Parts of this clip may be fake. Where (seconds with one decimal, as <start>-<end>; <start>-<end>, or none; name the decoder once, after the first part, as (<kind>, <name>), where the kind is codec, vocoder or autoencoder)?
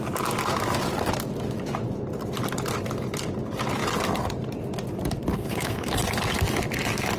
5.3-5.9 (codec, SNAC)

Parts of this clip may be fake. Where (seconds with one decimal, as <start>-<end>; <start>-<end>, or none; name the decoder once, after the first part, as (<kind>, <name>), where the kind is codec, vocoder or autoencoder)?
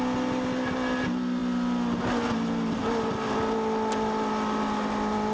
none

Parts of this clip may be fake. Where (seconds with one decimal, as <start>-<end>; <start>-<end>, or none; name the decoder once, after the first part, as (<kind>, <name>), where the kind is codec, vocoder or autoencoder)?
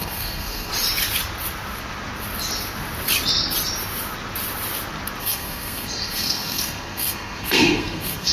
0.0-0.7 (codec, SNAC); 5.2-8.3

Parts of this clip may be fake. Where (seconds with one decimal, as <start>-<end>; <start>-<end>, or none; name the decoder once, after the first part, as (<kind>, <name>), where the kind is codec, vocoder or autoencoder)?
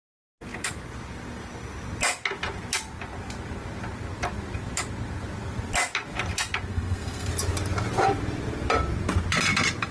6.7-7.3 (codec, SNAC)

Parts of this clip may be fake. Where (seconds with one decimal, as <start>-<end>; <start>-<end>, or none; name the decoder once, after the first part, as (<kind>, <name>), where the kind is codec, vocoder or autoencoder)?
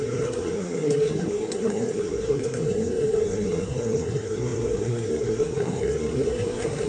0.0-6.9 (codec, SNAC)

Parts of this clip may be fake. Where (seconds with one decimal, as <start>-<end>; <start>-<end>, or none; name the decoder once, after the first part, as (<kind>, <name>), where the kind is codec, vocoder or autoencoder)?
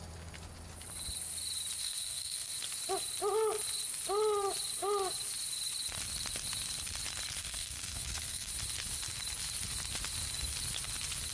1.8-2.5 (codec, SNAC); 7.4-8.5